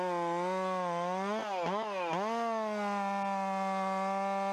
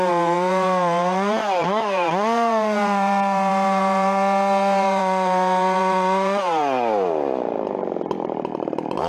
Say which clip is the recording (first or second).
first